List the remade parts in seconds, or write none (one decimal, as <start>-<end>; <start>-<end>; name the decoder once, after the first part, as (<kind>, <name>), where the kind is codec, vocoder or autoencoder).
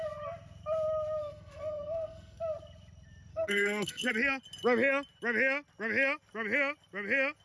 1.2-2.4 (codec, SNAC); 3.3-4.1